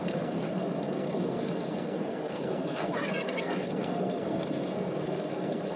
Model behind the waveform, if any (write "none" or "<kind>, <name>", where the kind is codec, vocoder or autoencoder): codec, SNAC